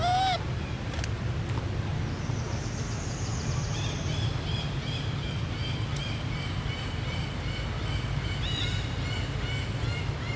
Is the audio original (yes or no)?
yes